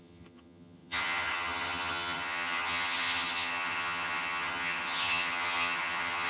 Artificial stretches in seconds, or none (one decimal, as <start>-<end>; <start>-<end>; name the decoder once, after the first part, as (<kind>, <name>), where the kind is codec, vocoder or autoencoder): 0.0-6.3 (vocoder, HiFi-GAN)

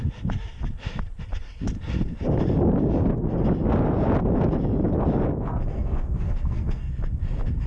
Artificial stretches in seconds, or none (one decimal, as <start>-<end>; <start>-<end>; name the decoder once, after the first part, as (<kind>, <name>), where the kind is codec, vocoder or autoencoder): 5.5-6.9 (codec, SNAC)

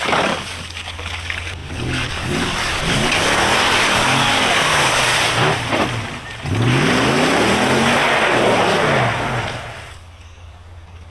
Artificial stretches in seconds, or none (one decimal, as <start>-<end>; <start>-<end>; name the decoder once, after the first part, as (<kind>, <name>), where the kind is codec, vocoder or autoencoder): 0.0-5.1 (codec, DAC); 9.9-11.1

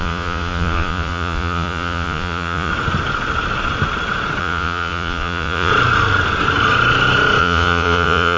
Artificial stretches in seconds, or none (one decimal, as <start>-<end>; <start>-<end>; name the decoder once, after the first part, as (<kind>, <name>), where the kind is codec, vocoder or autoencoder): 0.0-2.7 (vocoder, Vocos); 4.4-5.7; 7.4-8.4